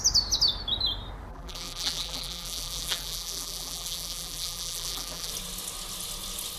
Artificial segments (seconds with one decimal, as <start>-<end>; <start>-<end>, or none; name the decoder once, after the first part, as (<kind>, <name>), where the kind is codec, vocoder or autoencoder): 1.3-5.3 (vocoder, BigVGAN v2)